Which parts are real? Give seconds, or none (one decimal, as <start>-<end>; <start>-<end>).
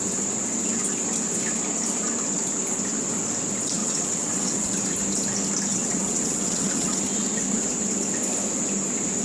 0.0-3.8; 4.7-5.7; 7.0-9.2